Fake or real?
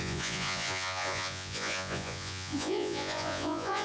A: fake